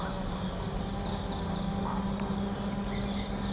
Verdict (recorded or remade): recorded